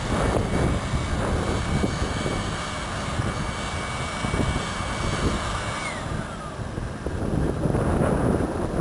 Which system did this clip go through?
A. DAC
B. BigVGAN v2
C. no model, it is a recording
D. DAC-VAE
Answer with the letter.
C